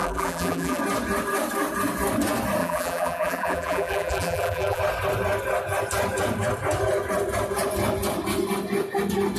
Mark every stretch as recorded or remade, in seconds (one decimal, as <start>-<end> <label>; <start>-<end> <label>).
0.0-0.8 remade; 0.8-2.6 recorded; 2.6-4.8 remade; 4.8-9.4 recorded